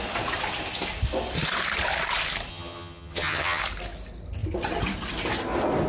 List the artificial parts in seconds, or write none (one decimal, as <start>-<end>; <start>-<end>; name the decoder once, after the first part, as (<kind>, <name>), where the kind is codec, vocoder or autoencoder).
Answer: 2.5-3.6 (vocoder, HiFi-GAN)